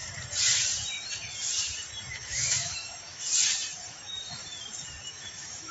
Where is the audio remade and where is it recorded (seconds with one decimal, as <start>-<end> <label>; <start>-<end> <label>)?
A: 0.0-2.1 recorded; 2.1-3.3 remade; 3.3-3.9 recorded; 3.9-4.4 remade; 4.4-5.1 recorded; 5.1-5.7 remade